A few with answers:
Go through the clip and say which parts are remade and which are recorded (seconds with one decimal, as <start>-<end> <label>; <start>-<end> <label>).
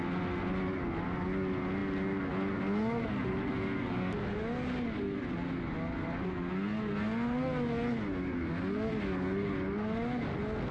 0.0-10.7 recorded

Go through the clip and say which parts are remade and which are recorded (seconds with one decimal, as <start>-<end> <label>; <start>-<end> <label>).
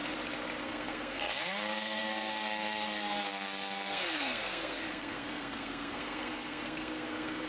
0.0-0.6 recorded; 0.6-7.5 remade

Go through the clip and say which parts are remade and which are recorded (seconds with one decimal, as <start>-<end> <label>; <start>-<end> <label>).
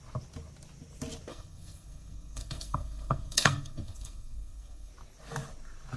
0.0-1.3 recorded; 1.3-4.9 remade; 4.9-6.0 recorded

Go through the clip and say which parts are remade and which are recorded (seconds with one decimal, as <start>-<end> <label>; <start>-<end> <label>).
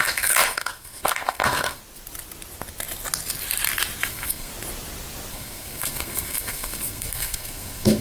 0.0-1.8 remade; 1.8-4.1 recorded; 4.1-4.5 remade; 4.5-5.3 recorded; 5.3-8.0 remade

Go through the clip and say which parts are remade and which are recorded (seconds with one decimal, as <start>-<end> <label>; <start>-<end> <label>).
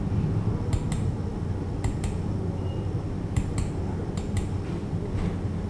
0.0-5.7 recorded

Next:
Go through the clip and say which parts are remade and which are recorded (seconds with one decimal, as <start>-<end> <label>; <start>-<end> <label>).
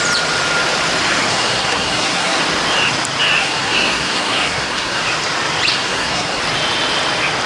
0.0-1.3 recorded; 1.3-2.4 remade; 2.4-3.4 recorded; 3.4-5.0 remade; 5.0-5.7 recorded; 5.7-6.4 remade; 6.4-7.5 recorded